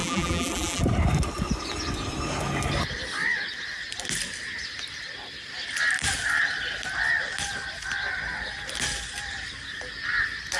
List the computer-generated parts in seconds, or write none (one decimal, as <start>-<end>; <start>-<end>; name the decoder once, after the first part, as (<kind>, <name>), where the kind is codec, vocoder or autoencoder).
0.0-0.8 (vocoder, BigVGAN v2)